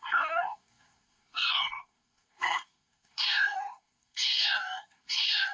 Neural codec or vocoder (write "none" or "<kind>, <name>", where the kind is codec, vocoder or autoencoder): codec, SNAC